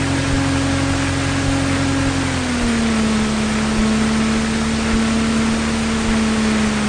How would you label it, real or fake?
real